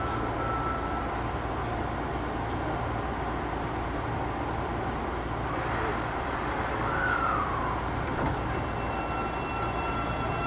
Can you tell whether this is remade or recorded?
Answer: recorded